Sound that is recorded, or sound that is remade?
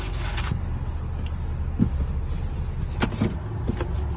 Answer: recorded